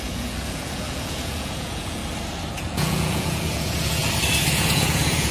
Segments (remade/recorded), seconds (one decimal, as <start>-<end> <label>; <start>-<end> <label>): 0.0-2.0 remade; 2.0-2.5 recorded; 2.5-4.0 remade; 4.0-4.5 recorded; 4.5-5.3 remade